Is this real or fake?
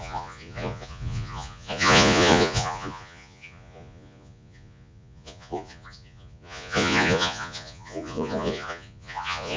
fake